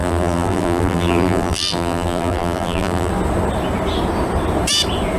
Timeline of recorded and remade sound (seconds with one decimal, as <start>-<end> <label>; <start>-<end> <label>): 0.0-3.1 remade; 3.1-5.2 recorded